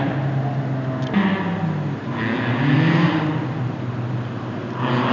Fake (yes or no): no